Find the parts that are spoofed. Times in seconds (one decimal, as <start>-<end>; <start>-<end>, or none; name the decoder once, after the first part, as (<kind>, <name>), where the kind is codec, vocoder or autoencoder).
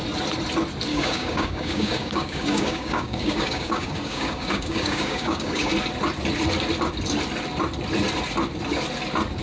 0.9-5.7 (codec, DAC)